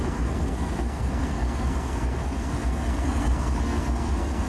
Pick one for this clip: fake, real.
fake